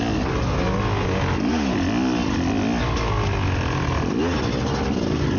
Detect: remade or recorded recorded